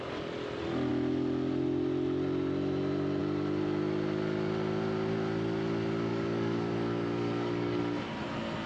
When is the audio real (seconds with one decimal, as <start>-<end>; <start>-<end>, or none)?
0.0-6.1; 7.8-8.7

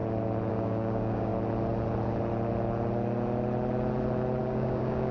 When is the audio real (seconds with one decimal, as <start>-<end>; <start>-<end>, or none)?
0.0-0.5; 1.3-4.4

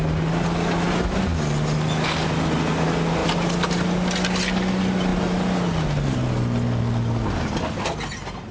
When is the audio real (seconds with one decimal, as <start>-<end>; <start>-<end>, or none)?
0.0-8.5

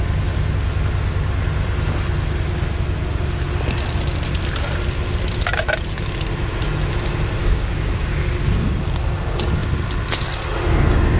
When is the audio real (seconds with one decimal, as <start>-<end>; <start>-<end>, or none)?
0.0-7.4; 8.5-11.2